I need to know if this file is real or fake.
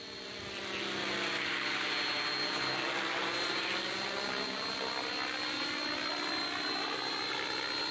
real